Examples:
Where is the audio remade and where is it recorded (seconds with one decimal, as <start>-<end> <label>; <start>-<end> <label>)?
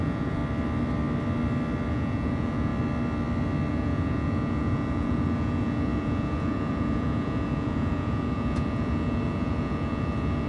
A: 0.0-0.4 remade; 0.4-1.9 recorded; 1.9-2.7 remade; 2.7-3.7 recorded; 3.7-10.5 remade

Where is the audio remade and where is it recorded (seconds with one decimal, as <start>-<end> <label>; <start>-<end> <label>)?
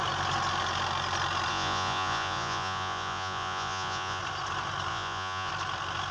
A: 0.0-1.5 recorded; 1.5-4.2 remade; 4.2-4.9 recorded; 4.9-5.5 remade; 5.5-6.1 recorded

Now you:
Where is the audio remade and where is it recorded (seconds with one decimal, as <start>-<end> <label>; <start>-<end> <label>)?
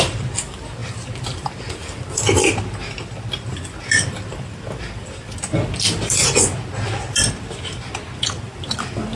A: 0.0-9.2 recorded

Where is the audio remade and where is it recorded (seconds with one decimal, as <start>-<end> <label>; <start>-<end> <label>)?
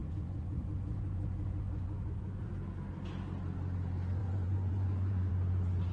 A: 0.0-2.5 remade; 2.5-4.2 recorded; 4.2-5.3 remade; 5.3-5.9 recorded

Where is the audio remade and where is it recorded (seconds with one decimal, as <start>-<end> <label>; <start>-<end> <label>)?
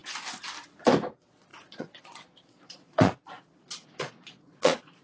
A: 0.0-1.1 recorded; 1.1-5.0 remade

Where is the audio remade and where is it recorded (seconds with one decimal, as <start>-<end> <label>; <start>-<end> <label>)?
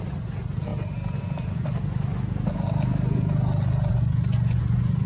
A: 0.0-3.9 recorded; 3.9-5.1 remade